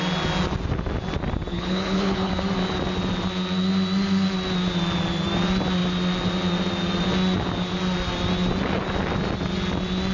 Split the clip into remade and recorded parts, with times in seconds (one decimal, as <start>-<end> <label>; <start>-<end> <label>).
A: 0.0-1.5 recorded; 1.5-2.3 remade; 2.3-10.1 recorded